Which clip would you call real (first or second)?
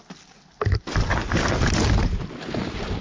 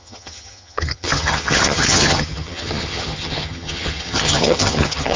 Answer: first